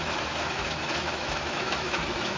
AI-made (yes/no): yes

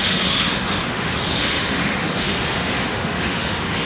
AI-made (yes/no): yes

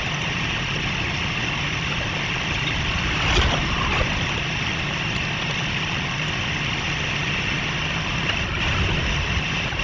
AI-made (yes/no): no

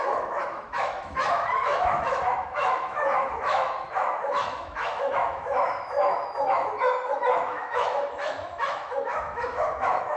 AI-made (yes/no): yes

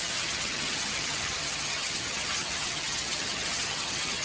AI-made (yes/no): yes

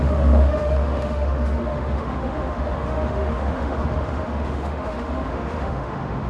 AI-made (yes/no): yes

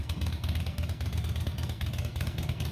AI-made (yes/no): yes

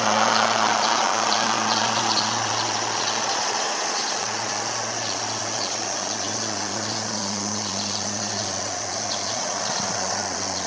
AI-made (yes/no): yes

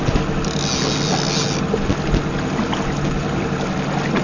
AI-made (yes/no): no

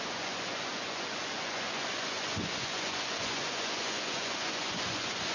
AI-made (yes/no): yes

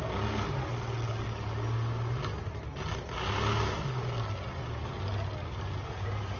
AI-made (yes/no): no